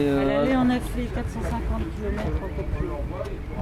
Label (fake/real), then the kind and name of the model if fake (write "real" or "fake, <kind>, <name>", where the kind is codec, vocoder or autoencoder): real